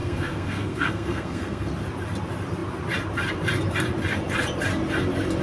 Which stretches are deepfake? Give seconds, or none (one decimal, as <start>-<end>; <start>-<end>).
0.0-1.7